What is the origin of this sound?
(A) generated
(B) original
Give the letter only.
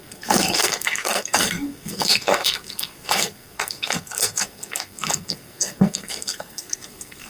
A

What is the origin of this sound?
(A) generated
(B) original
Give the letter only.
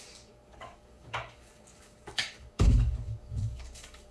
A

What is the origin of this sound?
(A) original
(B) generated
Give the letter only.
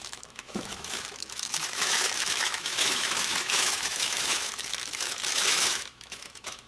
B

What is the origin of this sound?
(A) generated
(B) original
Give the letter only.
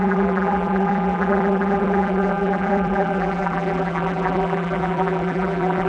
A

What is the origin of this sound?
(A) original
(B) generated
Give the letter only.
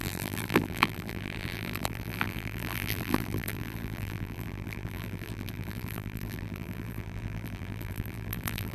B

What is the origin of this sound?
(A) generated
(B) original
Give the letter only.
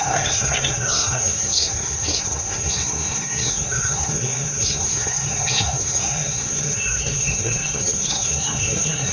A